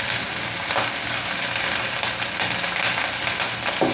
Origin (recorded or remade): recorded